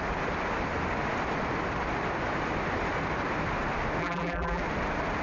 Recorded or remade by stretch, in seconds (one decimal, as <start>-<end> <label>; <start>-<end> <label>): 0.0-4.0 recorded; 4.0-4.6 remade; 4.6-5.2 recorded